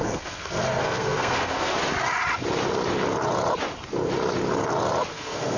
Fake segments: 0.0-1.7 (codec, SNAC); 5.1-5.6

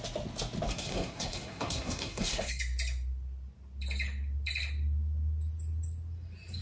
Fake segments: 0.7-2.6 (codec, SNAC)

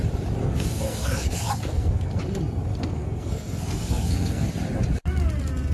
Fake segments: 0.4-2.2 (codec, SNAC); 2.7-4.5